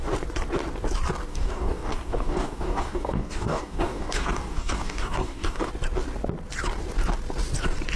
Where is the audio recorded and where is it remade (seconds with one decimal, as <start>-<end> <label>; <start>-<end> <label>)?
0.0-1.3 recorded; 1.3-5.7 remade; 5.7-8.0 recorded

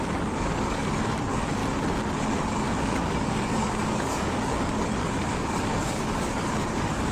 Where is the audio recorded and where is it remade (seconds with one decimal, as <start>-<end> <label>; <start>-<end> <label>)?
0.0-1.6 remade; 1.6-2.8 recorded; 2.8-7.1 remade